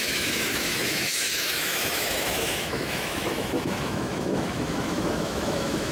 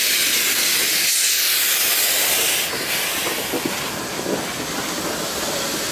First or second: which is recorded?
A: second